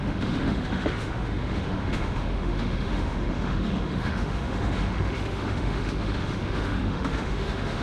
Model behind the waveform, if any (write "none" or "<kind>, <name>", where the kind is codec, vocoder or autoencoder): autoencoder, DAC-VAE